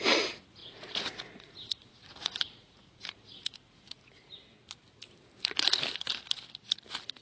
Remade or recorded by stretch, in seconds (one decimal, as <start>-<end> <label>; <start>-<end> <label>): 0.0-0.6 recorded; 0.6-4.3 remade; 4.3-7.2 recorded